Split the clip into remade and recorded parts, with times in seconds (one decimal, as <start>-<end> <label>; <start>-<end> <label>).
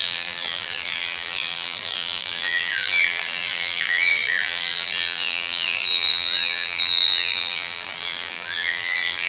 0.0-9.3 remade